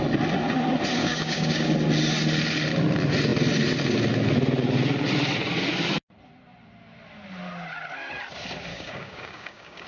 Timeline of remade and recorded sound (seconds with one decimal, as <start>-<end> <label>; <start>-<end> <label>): 0.0-1.0 recorded; 1.0-1.7 remade; 1.7-8.7 recorded; 8.7-9.9 remade